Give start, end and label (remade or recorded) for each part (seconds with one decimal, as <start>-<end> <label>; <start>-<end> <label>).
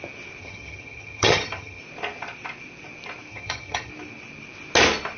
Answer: 0.0-0.4 recorded; 0.4-1.8 remade; 1.8-3.3 recorded; 3.3-3.9 remade; 3.9-5.2 recorded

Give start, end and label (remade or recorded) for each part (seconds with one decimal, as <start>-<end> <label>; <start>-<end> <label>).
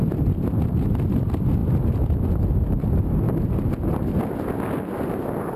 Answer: 0.0-5.6 recorded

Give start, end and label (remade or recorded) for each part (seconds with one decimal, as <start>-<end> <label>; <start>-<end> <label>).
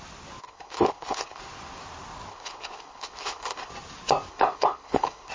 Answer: 0.0-0.4 recorded; 0.4-1.4 remade; 1.4-2.3 recorded; 2.3-3.7 remade; 3.7-4.3 recorded; 4.3-5.3 remade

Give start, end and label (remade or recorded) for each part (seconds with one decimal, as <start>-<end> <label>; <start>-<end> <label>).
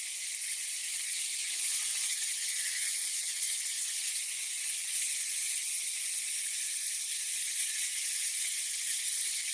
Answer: 0.0-0.4 recorded; 0.4-5.0 remade; 5.0-7.6 recorded; 7.6-9.5 remade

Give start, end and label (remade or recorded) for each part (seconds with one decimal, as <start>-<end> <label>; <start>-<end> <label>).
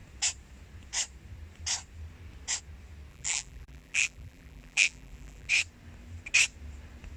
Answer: 0.0-3.1 recorded; 3.1-5.5 remade; 5.5-7.2 recorded